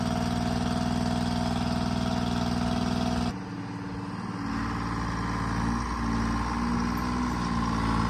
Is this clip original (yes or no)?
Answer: yes